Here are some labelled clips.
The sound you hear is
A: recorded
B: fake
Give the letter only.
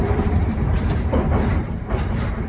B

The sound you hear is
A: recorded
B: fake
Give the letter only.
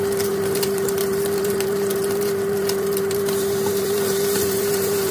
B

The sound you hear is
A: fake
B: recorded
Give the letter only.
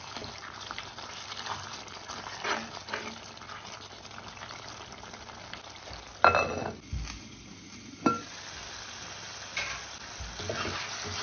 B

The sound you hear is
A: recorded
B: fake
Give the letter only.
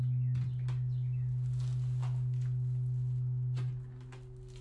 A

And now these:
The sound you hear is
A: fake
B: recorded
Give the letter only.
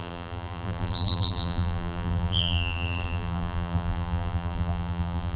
A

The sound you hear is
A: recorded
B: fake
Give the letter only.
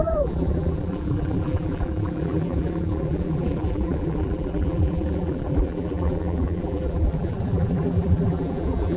B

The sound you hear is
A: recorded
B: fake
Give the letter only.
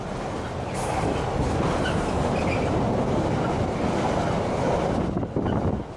A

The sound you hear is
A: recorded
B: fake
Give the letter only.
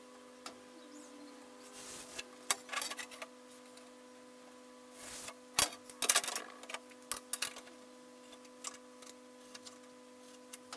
A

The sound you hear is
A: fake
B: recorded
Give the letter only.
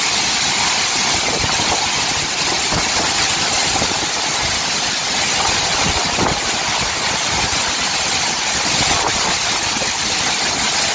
B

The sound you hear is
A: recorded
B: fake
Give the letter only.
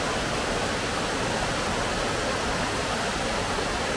A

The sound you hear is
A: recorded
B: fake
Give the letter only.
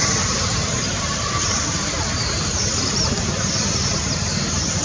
B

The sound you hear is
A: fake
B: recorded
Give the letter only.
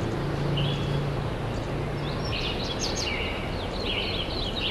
B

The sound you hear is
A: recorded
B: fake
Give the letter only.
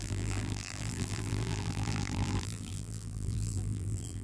B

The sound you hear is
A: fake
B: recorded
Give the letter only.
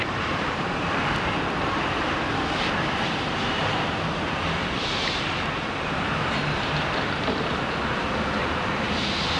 A